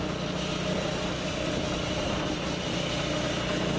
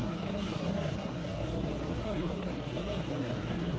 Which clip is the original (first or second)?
first